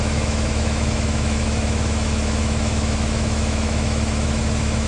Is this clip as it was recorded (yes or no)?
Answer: no